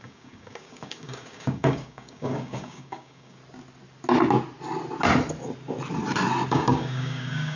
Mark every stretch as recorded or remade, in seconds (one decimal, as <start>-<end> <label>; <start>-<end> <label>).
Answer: 0.0-3.4 remade; 3.4-6.5 recorded; 6.5-7.6 remade